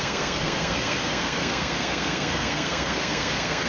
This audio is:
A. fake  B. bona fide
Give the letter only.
A